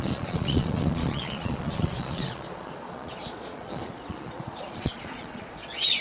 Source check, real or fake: fake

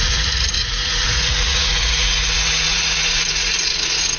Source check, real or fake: fake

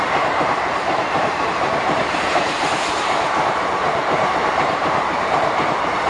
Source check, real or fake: fake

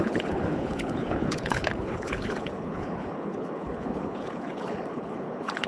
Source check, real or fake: fake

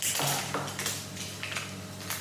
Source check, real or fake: real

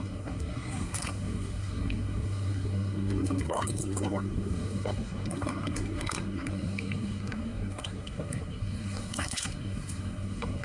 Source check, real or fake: fake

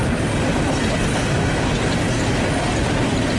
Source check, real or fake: real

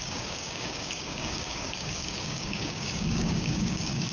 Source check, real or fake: fake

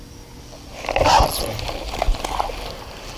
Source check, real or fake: real